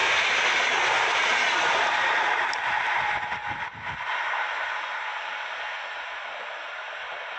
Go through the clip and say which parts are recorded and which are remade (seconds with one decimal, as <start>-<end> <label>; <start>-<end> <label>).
0.0-3.0 remade; 3.0-7.4 recorded

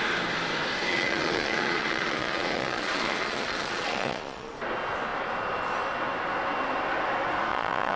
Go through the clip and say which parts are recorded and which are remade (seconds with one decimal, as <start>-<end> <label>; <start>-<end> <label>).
0.0-0.9 recorded; 0.9-4.5 remade; 4.5-7.5 recorded; 7.5-8.0 remade

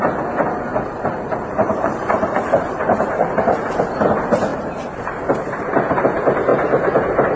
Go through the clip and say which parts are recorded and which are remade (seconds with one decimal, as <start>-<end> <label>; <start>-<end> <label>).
0.0-0.7 recorded; 0.7-3.9 remade; 3.9-4.5 recorded; 4.5-5.6 remade; 5.6-7.4 recorded

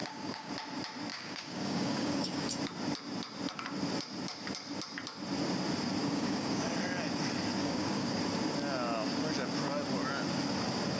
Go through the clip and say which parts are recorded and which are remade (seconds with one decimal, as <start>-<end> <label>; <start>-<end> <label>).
0.0-0.5 remade; 0.5-1.1 recorded; 1.1-2.6 remade; 2.6-6.0 recorded; 6.0-6.6 remade; 6.6-7.6 recorded; 7.6-8.2 remade; 8.2-11.0 recorded

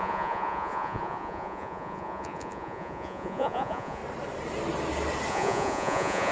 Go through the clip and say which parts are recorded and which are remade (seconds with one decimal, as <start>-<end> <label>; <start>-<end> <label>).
0.0-4.0 remade; 4.0-5.3 recorded; 5.3-6.3 remade